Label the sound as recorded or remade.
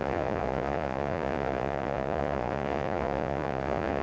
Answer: remade